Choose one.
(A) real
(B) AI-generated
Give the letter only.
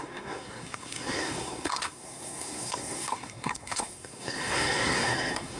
B